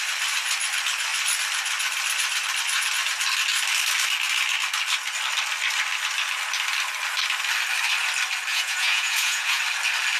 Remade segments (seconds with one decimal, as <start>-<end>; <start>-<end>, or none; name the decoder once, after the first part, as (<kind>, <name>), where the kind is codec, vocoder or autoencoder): 8.5-9.6 (vocoder, Vocos)